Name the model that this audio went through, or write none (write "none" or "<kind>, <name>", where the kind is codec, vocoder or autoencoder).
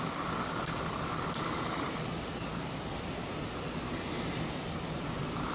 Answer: none